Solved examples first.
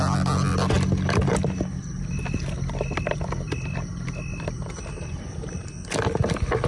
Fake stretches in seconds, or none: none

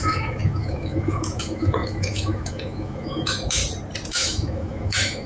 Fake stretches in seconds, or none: 0.0-3.6 (autoencoder, DAC-VAE); 4.1-5.3

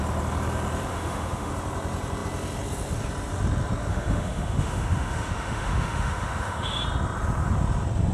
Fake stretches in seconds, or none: 0.9-1.5 (autoencoder, DAC-VAE); 3.9-6.8

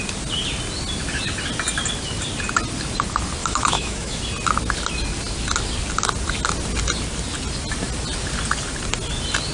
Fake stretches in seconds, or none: 3.4-4.2 (autoencoder, DAC-VAE)

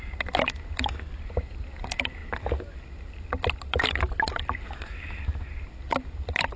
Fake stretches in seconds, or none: none

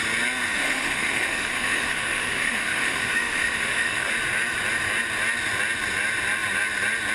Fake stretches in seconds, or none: 0.5-4.1 (autoencoder, DAC-VAE)